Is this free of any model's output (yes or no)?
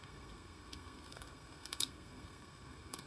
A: no